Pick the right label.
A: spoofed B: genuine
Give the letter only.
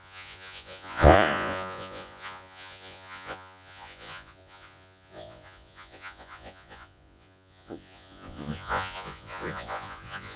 A